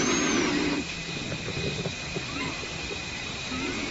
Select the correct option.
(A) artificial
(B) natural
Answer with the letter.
B